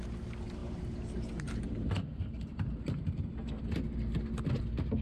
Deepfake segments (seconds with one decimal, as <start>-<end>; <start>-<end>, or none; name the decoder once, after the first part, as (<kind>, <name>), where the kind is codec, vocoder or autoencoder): 0.6-3.6 (vocoder, BigVGAN v2)